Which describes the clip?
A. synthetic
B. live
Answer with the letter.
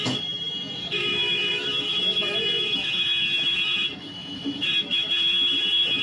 A